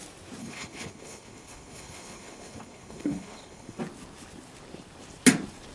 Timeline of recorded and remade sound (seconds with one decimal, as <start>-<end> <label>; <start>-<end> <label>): 0.0-0.4 recorded; 0.4-3.8 remade; 3.8-5.7 recorded